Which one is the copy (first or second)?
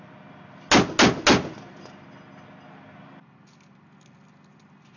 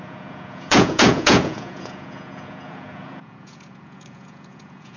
second